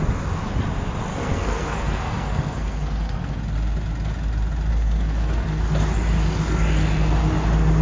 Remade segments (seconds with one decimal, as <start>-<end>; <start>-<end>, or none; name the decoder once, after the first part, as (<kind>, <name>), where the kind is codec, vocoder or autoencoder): 1.1-3.4 (codec, SNAC); 4.7-5.6